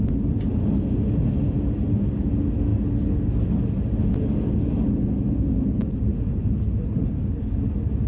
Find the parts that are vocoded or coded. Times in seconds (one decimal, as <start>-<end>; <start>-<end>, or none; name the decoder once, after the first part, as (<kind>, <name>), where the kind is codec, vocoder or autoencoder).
none